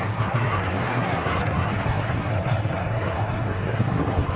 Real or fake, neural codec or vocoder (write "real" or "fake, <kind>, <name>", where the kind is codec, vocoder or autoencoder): fake, codec, SNAC